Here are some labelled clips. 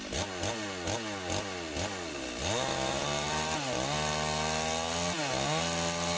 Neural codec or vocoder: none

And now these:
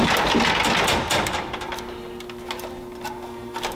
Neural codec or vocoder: none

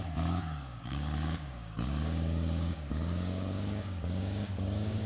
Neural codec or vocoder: codec, DAC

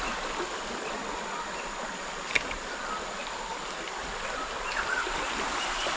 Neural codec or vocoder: none